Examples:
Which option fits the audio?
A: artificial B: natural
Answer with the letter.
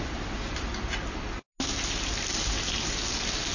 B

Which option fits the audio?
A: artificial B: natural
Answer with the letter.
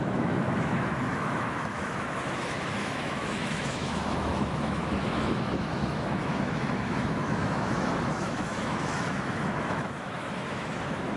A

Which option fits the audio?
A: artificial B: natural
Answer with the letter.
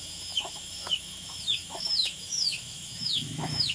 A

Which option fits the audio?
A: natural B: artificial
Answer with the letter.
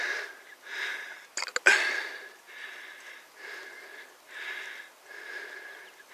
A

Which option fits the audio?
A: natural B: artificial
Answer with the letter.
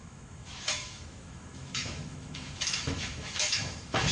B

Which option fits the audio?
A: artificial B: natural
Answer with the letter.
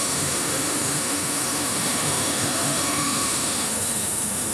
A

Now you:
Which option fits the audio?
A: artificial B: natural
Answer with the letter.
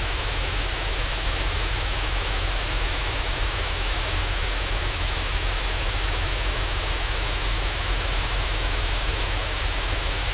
A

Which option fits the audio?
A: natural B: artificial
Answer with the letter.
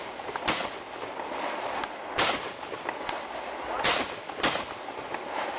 A